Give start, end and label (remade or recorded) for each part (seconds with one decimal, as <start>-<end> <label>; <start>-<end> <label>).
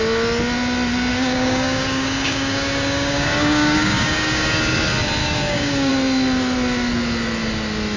0.0-1.1 recorded; 1.1-4.6 remade; 4.6-5.2 recorded; 5.2-5.9 remade; 5.9-8.0 recorded